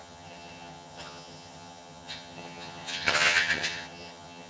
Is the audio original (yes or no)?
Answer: no